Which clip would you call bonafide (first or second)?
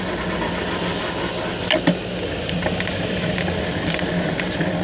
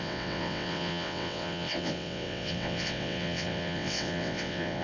first